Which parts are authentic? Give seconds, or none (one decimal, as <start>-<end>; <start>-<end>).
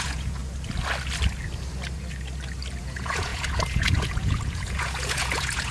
0.4-2.8